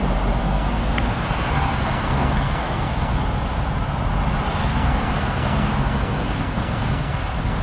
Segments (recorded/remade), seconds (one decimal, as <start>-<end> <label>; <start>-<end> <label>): 0.0-0.4 recorded; 0.4-3.2 remade; 3.2-4.6 recorded; 4.6-7.6 remade